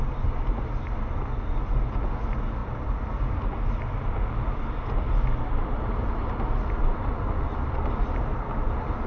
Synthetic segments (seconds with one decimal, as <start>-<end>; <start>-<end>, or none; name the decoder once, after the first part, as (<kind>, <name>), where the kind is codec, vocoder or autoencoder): none